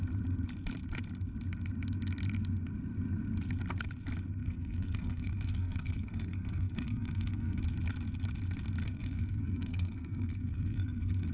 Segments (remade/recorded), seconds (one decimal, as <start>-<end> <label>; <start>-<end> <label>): 0.0-4.4 recorded; 4.4-7.6 remade; 7.6-8.8 recorded; 8.8-11.3 remade